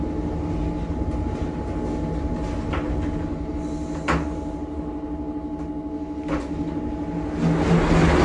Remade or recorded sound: recorded